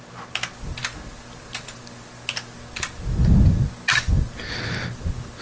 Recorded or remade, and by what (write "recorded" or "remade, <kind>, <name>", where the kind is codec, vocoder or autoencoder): recorded